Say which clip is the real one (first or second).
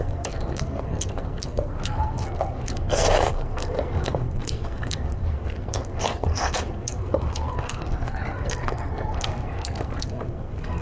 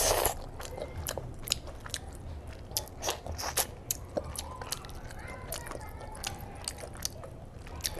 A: second